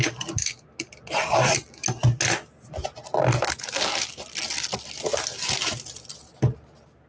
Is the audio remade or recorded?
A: recorded